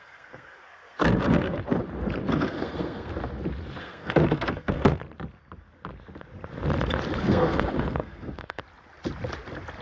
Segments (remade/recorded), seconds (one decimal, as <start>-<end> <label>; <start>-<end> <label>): 0.0-1.6 remade; 1.6-2.3 recorded; 2.3-3.1 remade; 3.1-3.8 recorded; 3.8-5.0 remade; 5.0-7.2 recorded; 7.2-8.6 remade; 8.6-9.8 recorded